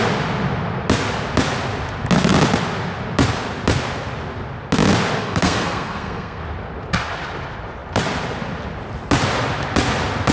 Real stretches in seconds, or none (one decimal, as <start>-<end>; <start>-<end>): 0.0-5.2; 6.4-10.3